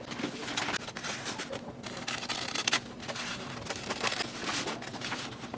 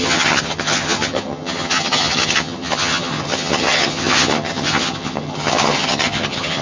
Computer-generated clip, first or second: second